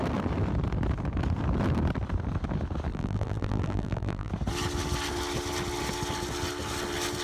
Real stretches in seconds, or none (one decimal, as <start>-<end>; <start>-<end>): 0.0-2.9; 4.3-7.2

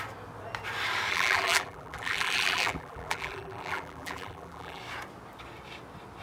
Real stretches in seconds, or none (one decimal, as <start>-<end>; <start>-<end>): 0.0-1.1; 4.8-6.2

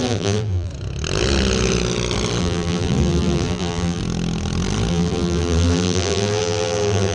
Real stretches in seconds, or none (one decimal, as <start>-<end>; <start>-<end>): 0.7-2.4; 4.0-4.9

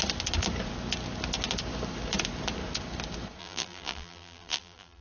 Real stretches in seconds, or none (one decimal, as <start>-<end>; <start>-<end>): 0.0-3.4